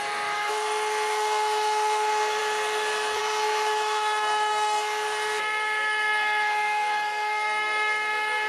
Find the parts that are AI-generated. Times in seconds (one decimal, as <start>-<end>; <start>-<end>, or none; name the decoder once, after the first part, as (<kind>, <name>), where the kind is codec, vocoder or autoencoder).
0.0-8.5 (codec, SNAC)